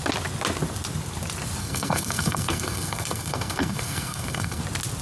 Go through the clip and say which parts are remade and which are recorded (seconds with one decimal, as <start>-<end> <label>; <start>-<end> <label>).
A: 0.0-1.6 recorded; 1.6-4.6 remade; 4.6-5.0 recorded